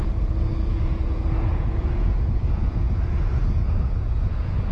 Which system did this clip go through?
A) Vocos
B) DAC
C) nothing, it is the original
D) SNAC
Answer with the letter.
A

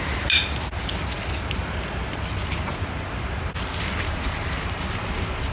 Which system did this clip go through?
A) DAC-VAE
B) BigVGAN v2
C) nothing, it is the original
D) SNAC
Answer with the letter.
C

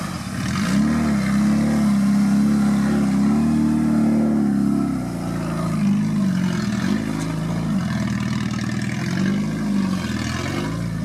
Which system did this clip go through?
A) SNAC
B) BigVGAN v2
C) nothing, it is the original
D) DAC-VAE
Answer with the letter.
C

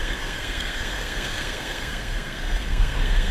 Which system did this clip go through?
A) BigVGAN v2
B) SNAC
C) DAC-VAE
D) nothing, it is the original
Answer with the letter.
B